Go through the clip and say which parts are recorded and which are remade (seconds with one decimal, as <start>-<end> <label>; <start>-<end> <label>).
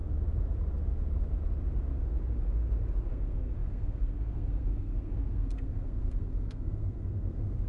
0.0-3.1 recorded; 3.1-7.7 remade